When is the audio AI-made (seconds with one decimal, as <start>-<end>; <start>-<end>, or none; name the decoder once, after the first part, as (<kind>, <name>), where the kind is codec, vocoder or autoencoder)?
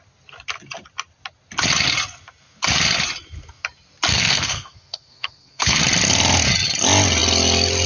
4.1-5.8 (codec, SNAC)